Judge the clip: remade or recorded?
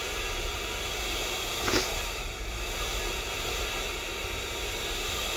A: recorded